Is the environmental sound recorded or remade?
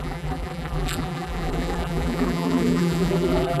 remade